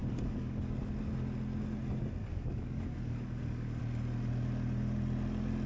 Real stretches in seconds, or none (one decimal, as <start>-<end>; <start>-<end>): 0.8-2.2; 3.8-5.7